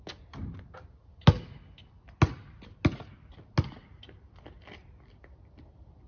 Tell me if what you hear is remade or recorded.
recorded